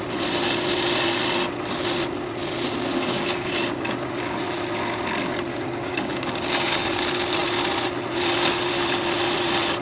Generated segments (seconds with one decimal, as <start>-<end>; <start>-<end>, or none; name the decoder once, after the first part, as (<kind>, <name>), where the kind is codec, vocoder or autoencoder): 2.9-4.4 (codec, DAC); 5.5-7.0